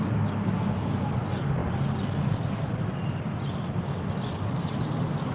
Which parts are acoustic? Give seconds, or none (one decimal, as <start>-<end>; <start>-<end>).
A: 1.6-4.7